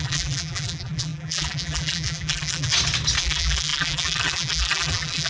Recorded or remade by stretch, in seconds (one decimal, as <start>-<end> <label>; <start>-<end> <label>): 0.0-2.7 remade; 2.7-3.2 recorded; 3.2-5.3 remade